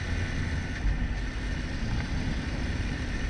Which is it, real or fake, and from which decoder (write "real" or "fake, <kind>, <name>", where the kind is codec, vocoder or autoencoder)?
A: real